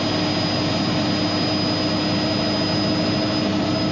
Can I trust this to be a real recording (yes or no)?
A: yes